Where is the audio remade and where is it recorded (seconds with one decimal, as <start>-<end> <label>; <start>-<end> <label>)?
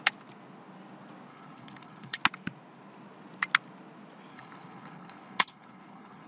0.0-1.3 recorded; 1.3-2.2 remade; 2.2-4.3 recorded; 4.3-6.3 remade